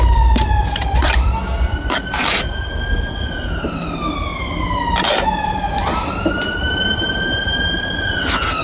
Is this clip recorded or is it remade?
recorded